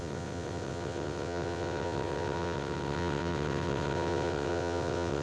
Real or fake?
fake